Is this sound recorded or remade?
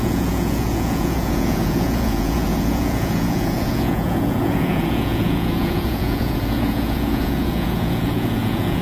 remade